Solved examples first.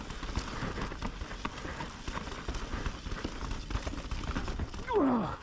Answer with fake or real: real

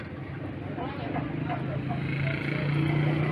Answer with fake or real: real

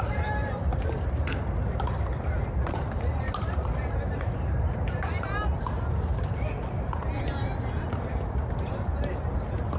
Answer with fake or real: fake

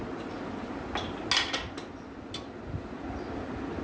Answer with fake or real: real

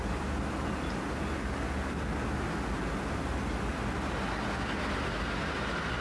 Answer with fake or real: real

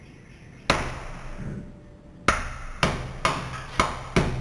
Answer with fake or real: real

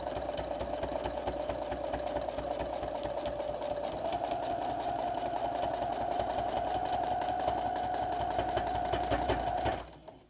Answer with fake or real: fake